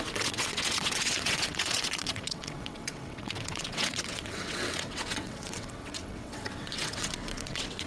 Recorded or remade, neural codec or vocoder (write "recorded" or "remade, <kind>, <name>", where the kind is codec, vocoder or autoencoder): remade, vocoder, WaveNeXt